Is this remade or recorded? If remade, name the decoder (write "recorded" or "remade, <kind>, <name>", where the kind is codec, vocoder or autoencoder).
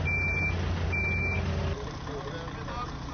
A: recorded